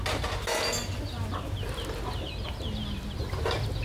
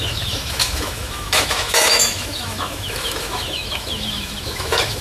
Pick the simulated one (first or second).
second